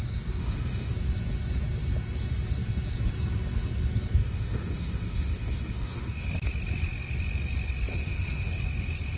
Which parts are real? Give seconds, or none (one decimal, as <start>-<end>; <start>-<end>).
0.0-0.4; 0.9-4.2; 6.3-7.9; 8.5-9.2